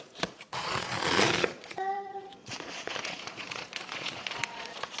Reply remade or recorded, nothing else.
remade